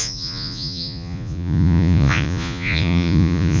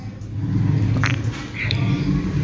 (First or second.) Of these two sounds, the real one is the second